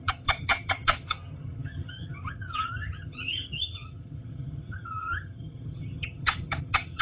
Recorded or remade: remade